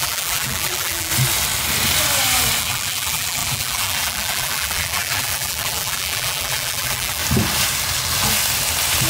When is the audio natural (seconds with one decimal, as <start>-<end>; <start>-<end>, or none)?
1.1-2.6; 7.2-9.1